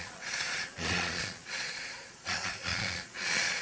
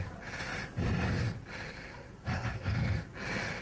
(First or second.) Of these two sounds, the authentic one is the second